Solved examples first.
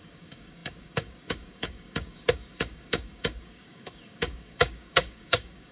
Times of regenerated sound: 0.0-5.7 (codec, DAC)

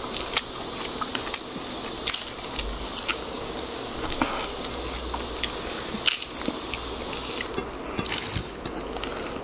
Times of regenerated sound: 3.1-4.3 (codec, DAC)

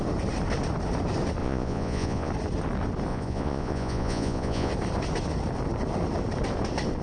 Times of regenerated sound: 1.4-2.3 (vocoder, Vocos); 3.1-4.7